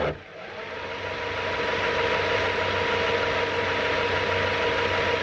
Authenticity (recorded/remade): recorded